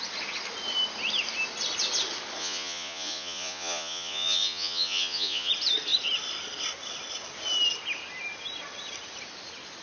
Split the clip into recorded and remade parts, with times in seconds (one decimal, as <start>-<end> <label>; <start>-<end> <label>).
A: 0.0-2.4 recorded; 2.4-5.5 remade; 5.5-9.8 recorded